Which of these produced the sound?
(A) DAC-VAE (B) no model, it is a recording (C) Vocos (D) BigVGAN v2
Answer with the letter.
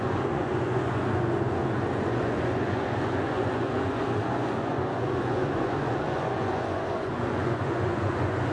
C